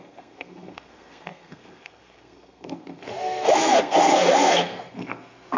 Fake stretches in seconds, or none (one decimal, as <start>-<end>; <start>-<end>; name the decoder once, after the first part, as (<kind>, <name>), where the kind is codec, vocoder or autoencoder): 0.0-5.6 (codec, SNAC)